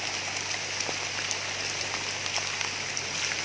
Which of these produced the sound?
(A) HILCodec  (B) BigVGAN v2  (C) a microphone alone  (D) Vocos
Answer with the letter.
C